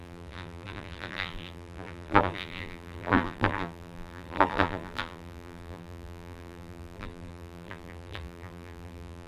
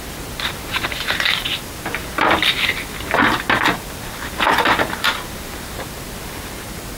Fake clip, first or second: first